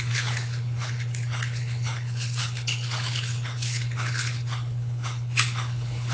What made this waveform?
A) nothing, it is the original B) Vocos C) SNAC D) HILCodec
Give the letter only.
D